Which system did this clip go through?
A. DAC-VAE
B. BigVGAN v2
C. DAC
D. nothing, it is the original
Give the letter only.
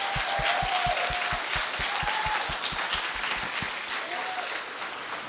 D